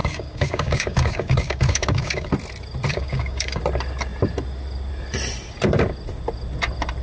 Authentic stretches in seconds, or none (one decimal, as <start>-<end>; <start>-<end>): 2.3-2.9; 3.6-7.0